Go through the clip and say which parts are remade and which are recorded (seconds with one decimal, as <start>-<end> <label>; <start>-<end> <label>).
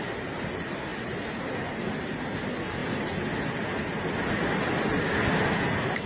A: 0.0-2.8 recorded; 2.8-4.1 remade; 4.1-6.1 recorded